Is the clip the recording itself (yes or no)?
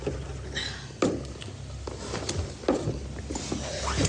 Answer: yes